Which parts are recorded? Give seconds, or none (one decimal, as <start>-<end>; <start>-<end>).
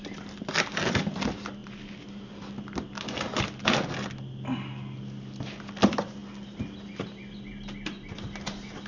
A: 0.0-8.9